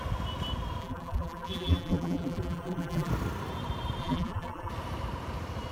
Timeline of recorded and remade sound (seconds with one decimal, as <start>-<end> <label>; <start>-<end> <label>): 0.0-0.8 recorded; 0.8-3.1 remade; 3.1-4.0 recorded; 4.0-4.7 remade; 4.7-5.7 recorded